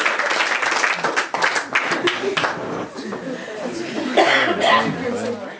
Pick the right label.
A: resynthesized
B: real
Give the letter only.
B